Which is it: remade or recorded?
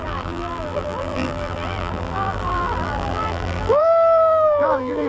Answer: remade